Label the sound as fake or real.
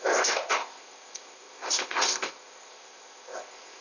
fake